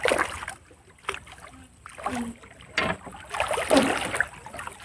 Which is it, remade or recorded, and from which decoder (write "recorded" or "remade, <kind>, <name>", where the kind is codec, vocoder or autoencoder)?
recorded